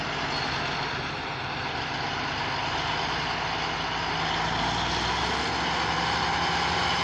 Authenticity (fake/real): real